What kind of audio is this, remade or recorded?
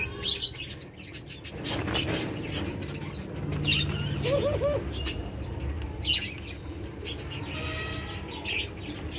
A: recorded